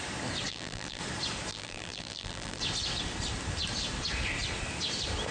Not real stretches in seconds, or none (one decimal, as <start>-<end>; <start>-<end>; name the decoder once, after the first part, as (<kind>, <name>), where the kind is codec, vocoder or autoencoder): 0.5-1.0 (vocoder, BigVGAN v2); 1.5-2.6